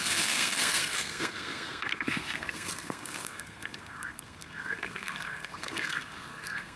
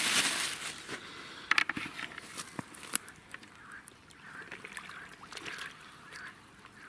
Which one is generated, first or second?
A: first